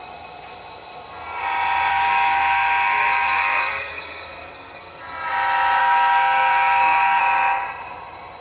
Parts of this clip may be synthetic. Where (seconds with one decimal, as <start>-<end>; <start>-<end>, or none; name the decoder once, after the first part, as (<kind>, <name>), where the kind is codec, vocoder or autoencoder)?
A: 1.9-5.0 (codec, SNAC); 5.8-7.2